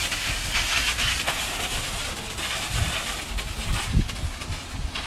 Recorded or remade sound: recorded